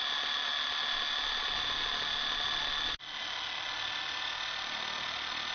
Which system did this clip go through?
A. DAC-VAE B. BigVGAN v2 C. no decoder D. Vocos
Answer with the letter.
C